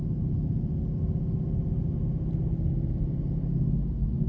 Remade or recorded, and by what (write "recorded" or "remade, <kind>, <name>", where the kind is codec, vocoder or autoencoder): recorded